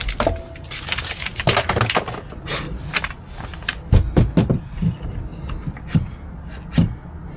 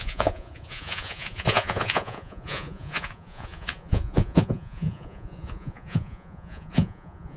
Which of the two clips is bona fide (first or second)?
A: first